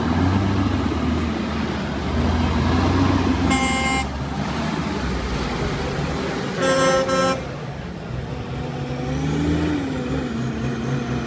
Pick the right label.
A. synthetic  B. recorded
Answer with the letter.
B